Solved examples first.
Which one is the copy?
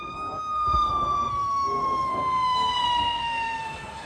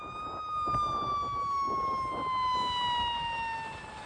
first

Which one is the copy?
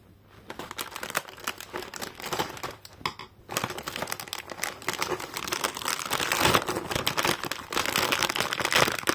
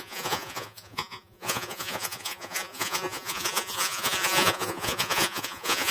second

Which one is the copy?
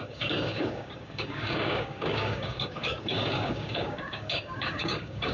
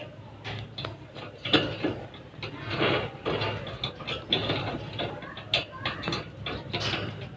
first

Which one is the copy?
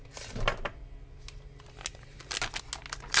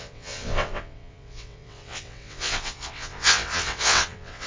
second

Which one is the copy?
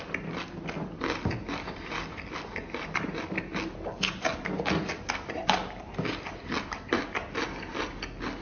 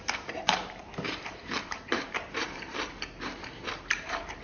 second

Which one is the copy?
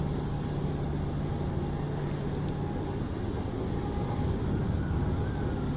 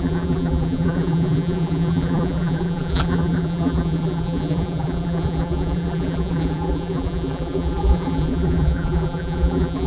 second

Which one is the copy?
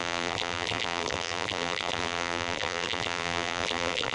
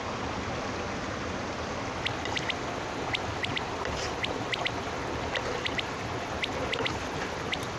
first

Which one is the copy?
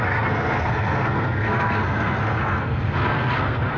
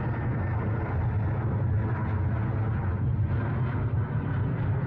first